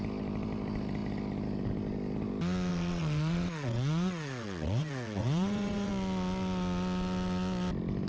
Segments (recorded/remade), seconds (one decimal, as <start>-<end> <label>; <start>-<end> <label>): 0.0-2.7 recorded; 2.7-5.9 remade; 5.9-8.1 recorded